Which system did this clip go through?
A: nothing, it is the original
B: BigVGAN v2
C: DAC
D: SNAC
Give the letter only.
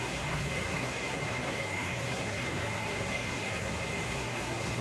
D